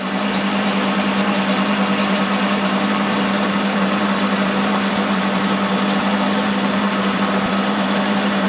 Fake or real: fake